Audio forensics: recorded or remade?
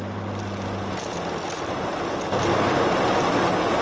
recorded